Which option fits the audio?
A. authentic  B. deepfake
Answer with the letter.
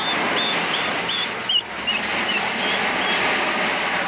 A